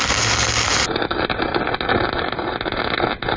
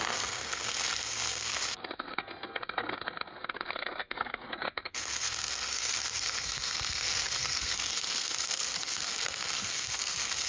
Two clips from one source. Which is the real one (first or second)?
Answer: first